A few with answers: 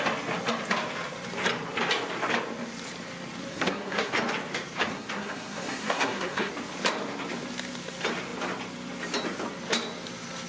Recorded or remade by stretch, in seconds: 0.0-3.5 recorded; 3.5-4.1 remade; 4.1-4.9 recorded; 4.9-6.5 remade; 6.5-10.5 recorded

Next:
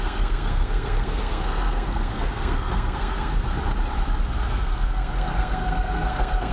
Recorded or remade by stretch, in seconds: 0.0-3.5 remade; 3.5-4.5 recorded; 4.5-6.5 remade

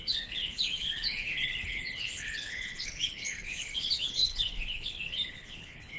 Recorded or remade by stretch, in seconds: 0.0-6.0 remade

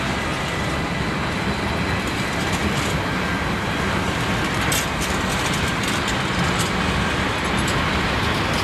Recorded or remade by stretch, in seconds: 0.0-8.6 recorded

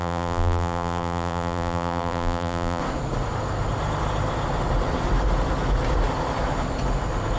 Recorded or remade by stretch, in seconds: 0.0-2.8 remade; 2.8-7.4 recorded

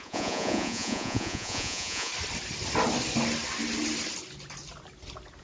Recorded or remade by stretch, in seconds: 0.0-2.1 remade; 2.1-5.4 recorded

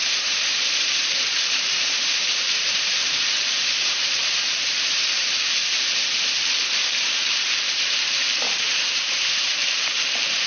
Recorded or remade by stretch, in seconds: 0.0-10.5 remade

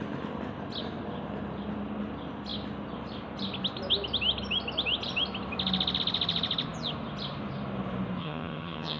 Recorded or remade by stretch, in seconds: 0.0-8.2 recorded; 8.2-9.0 remade